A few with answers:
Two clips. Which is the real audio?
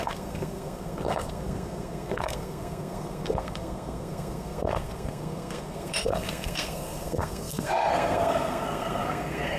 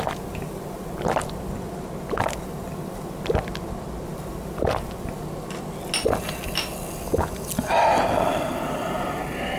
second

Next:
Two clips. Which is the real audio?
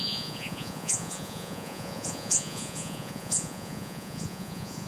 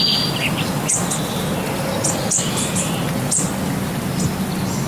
second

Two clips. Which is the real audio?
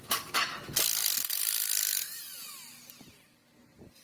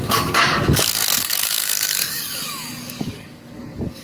first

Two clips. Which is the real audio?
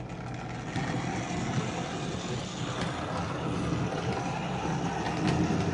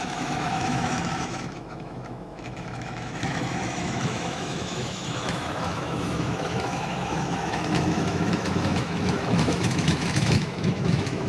first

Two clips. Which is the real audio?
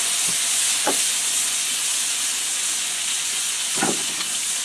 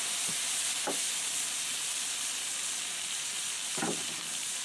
second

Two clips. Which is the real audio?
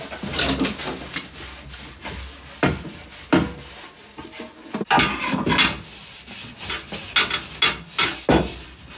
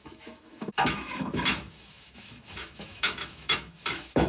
first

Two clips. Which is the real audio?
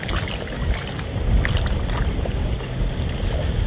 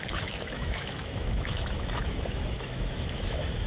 first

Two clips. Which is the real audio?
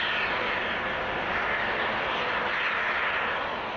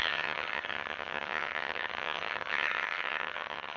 first